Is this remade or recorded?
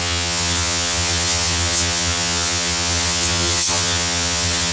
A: remade